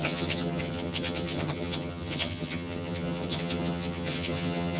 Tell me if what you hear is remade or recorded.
remade